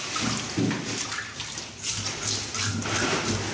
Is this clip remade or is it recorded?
recorded